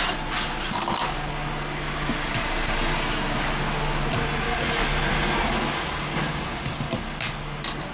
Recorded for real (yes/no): yes